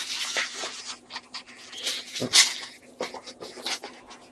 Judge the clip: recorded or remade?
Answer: recorded